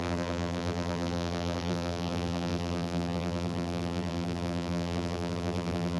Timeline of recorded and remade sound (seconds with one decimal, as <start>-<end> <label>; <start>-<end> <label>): 0.0-6.0 remade

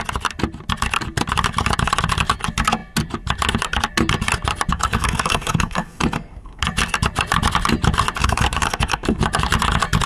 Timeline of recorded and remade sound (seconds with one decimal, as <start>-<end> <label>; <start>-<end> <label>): 0.0-4.7 recorded; 4.7-6.6 remade; 6.6-8.2 recorded; 8.2-9.2 remade; 9.2-10.1 recorded